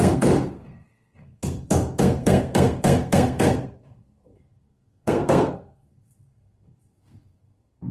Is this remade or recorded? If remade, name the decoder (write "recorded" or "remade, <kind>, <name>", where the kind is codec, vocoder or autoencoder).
remade, codec, SNAC